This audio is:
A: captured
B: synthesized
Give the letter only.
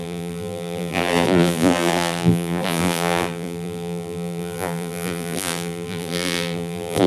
B